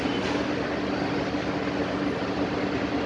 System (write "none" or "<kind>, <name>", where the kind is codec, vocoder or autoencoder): none